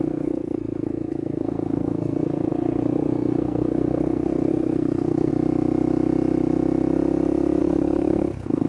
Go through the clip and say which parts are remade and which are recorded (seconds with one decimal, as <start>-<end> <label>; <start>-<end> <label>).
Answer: 0.0-5.3 remade; 5.3-7.6 recorded; 7.6-8.7 remade